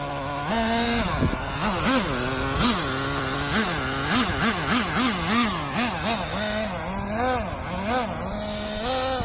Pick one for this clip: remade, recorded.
recorded